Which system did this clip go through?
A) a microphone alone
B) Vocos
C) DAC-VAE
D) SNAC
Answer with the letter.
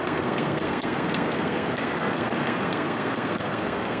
D